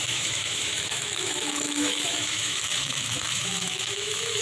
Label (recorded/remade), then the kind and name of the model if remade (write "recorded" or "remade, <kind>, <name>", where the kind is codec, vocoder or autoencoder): remade, autoencoder, DAC-VAE